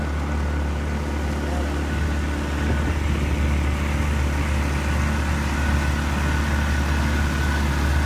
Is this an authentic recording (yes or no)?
yes